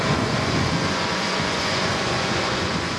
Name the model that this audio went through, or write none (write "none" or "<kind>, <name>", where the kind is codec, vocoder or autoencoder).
vocoder, Vocos